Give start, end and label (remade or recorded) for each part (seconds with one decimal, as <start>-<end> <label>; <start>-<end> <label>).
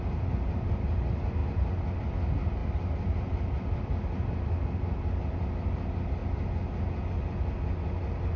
0.0-8.4 recorded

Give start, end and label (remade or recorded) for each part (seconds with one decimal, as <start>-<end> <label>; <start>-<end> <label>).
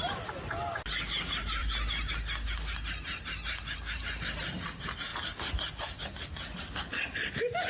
0.0-1.6 recorded; 1.6-2.1 remade; 2.1-7.7 recorded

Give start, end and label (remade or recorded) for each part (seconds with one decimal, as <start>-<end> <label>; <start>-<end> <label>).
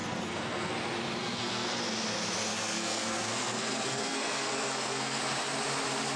0.0-0.7 remade; 0.7-1.2 recorded; 1.2-1.8 remade; 1.8-2.5 recorded; 2.5-5.2 remade; 5.2-6.2 recorded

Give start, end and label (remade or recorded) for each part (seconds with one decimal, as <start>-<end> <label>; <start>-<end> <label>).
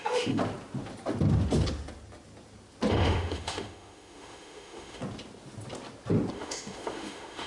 0.0-0.4 remade; 0.4-2.9 recorded; 2.9-5.0 remade; 5.0-6.3 recorded; 6.3-7.5 remade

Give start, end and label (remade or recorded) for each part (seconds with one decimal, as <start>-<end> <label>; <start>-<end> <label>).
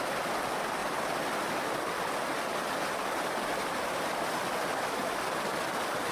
0.0-6.1 recorded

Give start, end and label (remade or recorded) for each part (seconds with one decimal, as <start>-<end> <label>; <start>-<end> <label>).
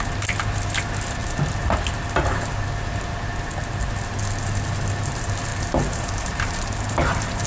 0.0-5.5 recorded; 5.5-7.5 remade